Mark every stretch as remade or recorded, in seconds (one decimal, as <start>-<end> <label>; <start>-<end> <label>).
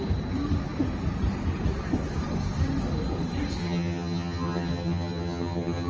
0.0-3.6 recorded; 3.6-5.9 remade